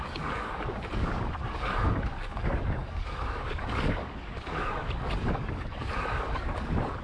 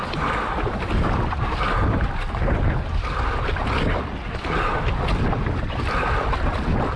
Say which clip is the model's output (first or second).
first